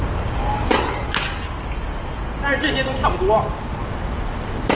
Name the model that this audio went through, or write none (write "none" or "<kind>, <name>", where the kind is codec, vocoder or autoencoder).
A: none